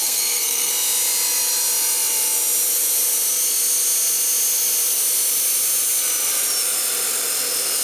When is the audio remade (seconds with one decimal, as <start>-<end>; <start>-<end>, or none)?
0.0-0.7